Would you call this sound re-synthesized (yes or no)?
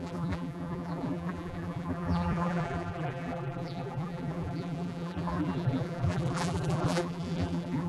yes